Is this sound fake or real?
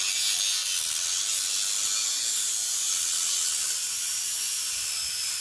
real